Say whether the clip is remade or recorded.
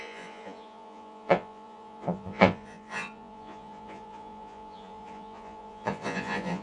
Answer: remade